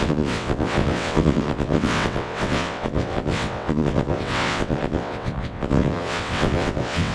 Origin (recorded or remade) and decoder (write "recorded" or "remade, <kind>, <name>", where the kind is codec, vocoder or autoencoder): remade, vocoder, WaveNeXt